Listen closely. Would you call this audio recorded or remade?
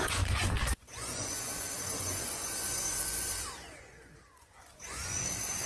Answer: remade